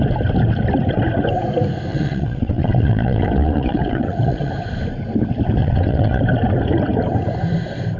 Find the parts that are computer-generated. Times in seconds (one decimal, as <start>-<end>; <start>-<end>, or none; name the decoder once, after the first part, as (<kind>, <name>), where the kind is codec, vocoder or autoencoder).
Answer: 1.9-4.5 (vocoder, WaveNeXt); 5.6-6.2